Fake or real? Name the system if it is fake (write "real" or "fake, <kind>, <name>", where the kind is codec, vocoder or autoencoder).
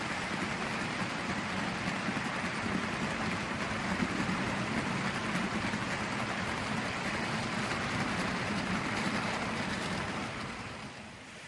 real